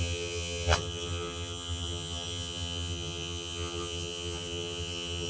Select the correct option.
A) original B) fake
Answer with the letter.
B